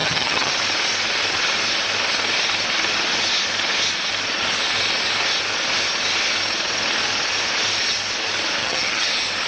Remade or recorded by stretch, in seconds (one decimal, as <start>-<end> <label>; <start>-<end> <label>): 0.0-0.5 remade; 0.5-8.6 recorded; 8.6-9.1 remade; 9.1-9.5 recorded